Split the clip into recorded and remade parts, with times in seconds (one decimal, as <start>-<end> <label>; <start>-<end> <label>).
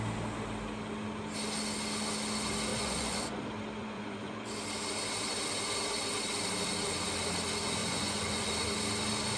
0.0-2.7 recorded; 2.7-3.4 remade; 3.4-3.8 recorded; 3.8-4.5 remade; 4.5-7.8 recorded; 7.8-8.5 remade; 8.5-9.4 recorded